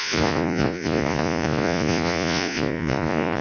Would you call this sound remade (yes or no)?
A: yes